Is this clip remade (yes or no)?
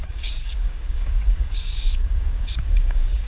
yes